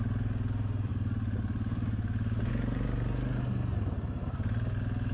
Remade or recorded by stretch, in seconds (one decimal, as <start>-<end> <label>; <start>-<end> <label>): 0.0-5.1 recorded